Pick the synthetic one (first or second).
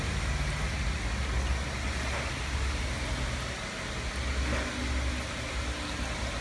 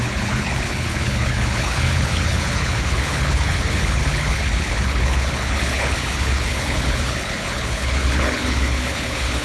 second